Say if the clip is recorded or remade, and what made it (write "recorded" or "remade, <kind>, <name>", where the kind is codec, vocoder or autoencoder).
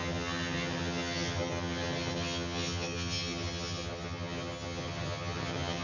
remade, vocoder, HiFi-GAN